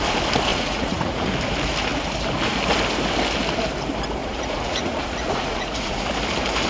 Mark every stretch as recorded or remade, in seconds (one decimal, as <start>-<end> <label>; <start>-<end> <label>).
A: 0.0-0.5 recorded; 0.5-1.3 remade; 1.3-4.2 recorded; 4.2-6.0 remade; 6.0-6.7 recorded

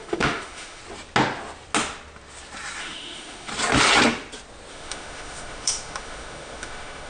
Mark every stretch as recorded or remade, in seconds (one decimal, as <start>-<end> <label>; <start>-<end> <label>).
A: 0.0-0.8 remade; 0.8-2.8 recorded; 2.8-3.5 remade; 3.5-4.7 recorded; 4.7-7.1 remade

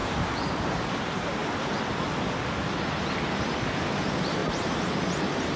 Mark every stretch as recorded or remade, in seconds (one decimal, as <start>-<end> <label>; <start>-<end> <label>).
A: 0.0-0.5 recorded; 0.5-1.4 remade; 1.4-3.7 recorded; 3.7-5.6 remade

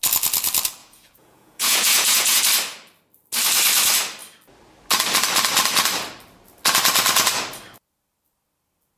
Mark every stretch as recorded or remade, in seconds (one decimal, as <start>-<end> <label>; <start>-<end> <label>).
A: 0.0-0.8 recorded; 0.8-2.4 remade; 2.4-9.0 recorded

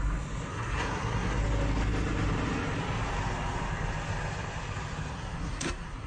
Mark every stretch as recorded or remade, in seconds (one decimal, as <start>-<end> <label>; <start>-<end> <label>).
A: 0.0-0.5 recorded; 0.5-1.4 remade; 1.4-5.1 recorded; 5.1-6.1 remade

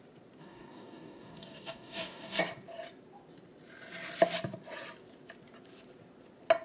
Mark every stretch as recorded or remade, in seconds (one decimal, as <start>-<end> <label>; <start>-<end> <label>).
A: 0.0-0.4 recorded; 0.4-2.4 remade; 2.4-6.6 recorded

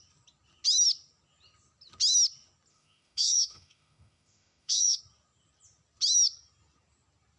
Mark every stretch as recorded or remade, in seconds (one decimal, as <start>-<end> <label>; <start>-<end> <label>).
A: 0.0-2.7 recorded; 2.7-5.0 remade; 5.0-7.4 recorded